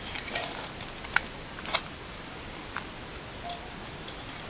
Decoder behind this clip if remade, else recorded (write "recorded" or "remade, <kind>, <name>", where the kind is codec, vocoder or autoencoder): recorded